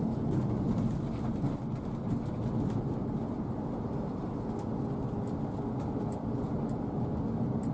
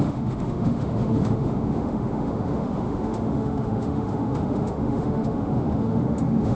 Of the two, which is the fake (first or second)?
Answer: second